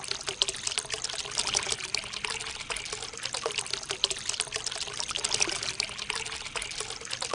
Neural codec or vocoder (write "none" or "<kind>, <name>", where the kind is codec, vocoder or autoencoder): none